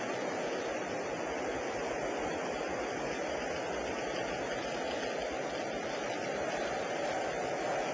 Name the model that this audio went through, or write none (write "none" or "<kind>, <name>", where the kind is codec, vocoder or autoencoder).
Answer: none